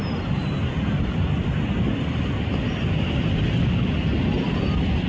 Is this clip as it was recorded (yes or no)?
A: yes